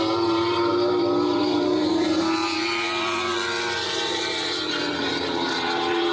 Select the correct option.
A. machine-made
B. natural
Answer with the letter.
A